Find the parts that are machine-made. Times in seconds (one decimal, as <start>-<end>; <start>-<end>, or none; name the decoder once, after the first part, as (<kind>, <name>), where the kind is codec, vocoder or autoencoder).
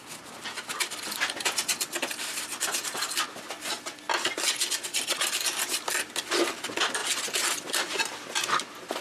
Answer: none